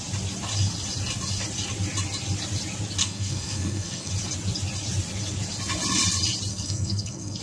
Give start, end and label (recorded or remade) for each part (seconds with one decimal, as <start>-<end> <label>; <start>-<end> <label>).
0.0-3.0 recorded; 3.0-4.1 remade; 4.1-6.5 recorded; 6.5-7.4 remade